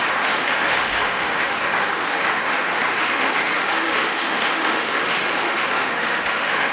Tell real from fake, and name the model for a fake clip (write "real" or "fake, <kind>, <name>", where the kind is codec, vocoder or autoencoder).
fake, autoencoder, DAC-VAE